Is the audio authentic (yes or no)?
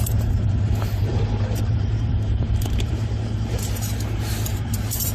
no